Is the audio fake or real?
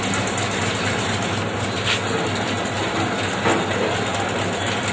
real